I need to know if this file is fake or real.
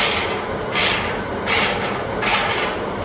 real